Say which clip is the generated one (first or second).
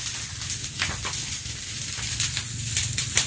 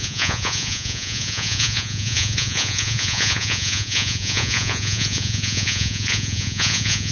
second